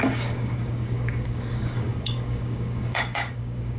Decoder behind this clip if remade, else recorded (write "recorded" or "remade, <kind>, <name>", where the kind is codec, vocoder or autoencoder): remade, codec, DAC